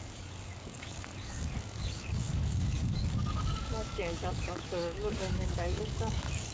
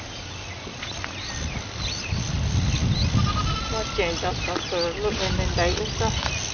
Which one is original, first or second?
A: second